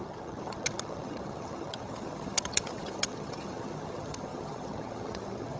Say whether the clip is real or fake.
fake